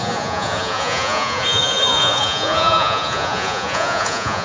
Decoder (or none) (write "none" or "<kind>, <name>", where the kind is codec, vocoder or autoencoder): vocoder, Vocos